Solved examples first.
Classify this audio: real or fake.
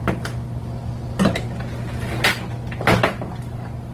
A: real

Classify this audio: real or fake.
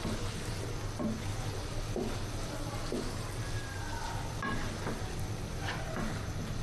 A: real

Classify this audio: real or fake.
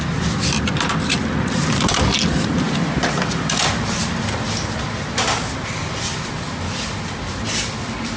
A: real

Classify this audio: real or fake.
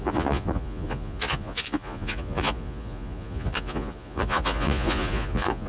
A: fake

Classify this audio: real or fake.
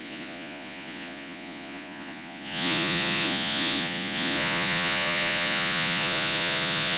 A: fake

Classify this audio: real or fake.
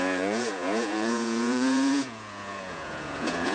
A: fake